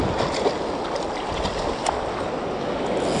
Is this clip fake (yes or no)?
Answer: no